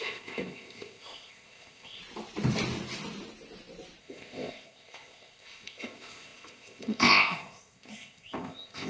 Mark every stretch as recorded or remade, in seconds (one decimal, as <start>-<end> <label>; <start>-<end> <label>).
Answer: 0.0-2.0 remade; 2.0-4.0 recorded; 4.0-8.9 remade